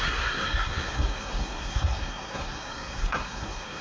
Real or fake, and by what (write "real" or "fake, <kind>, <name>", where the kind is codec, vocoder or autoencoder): fake, codec, SNAC